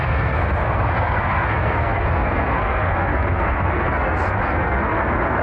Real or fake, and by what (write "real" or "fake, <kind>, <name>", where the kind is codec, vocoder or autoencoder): fake, codec, SNAC